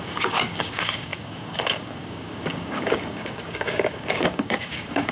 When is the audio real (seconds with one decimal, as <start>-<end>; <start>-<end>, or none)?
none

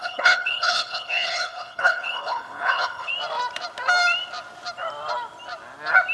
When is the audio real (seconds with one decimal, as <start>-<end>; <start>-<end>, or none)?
3.1-6.1

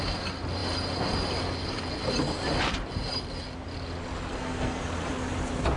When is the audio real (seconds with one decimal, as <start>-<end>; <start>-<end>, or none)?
0.0-4.3; 4.8-5.8

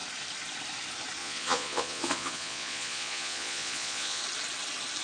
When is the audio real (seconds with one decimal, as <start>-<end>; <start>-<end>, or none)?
0.0-1.2; 4.2-5.0